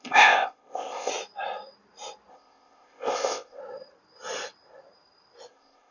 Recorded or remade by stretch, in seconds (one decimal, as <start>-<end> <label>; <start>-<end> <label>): 0.0-1.1 remade; 1.1-2.3 recorded; 2.3-3.6 remade; 3.6-5.5 recorded; 5.5-5.9 remade